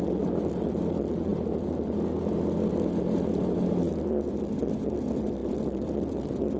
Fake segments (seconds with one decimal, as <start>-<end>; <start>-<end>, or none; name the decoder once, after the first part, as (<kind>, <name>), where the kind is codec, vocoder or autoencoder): none